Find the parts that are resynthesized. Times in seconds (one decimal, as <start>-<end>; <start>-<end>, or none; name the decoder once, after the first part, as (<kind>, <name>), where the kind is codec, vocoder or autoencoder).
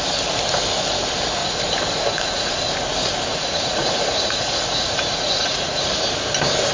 1.4-2.8 (vocoder, Vocos); 3.3-5.8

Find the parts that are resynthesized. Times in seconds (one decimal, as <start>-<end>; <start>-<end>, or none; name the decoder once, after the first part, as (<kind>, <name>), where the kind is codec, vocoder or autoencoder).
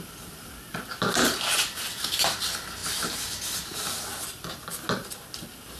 none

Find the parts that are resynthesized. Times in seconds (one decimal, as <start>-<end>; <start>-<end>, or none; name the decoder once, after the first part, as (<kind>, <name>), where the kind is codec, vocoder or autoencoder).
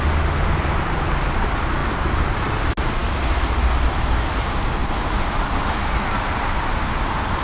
none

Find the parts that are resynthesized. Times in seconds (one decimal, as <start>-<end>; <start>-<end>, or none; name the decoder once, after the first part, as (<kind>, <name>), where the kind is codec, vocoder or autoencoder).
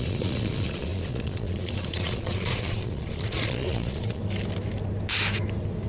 0.0-4.2 (vocoder, Vocos)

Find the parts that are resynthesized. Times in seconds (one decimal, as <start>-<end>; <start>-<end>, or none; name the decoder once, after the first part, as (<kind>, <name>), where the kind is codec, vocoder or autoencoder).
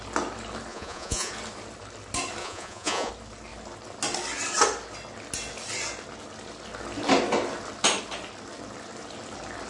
0.7-1.3 (vocoder, Vocos); 2.4-3.1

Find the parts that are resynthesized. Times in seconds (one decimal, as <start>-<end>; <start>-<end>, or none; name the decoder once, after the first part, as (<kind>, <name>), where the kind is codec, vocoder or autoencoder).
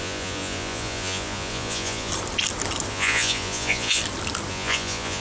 0.0-2.1 (vocoder, Vocos); 2.9-4.0; 4.5-5.2